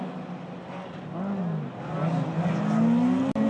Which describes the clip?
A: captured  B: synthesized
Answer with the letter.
A